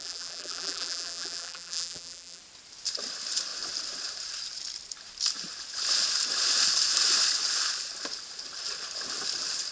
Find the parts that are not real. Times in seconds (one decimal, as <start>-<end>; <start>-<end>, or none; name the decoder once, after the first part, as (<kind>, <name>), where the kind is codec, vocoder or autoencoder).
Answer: 0.0-2.4 (vocoder, BigVGAN v2)